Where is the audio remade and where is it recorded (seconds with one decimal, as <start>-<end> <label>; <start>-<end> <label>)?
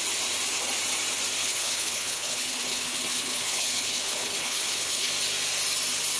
0.0-1.4 recorded; 1.4-5.1 remade; 5.1-6.2 recorded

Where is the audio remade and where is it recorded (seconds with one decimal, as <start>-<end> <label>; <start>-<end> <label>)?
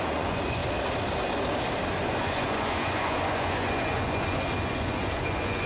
0.0-0.6 remade; 0.6-1.9 recorded; 1.9-5.7 remade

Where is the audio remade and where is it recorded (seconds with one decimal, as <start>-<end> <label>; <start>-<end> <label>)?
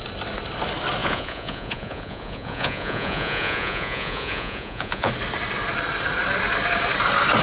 0.0-1.0 recorded; 1.0-5.1 remade; 5.1-7.4 recorded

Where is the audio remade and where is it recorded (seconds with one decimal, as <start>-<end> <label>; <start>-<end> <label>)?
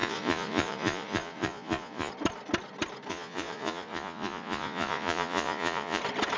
0.0-2.1 remade; 2.1-3.1 recorded; 3.1-6.0 remade; 6.0-6.4 recorded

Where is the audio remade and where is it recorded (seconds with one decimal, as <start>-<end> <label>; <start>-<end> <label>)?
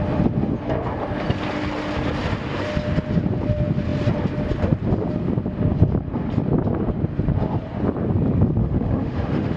0.0-8.6 recorded; 8.6-9.6 remade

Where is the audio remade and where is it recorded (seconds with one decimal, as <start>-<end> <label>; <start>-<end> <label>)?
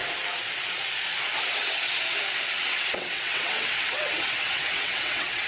0.0-2.6 recorded; 2.6-5.5 remade